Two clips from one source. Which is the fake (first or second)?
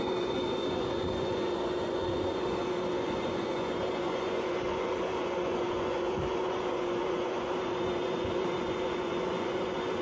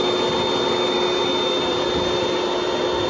first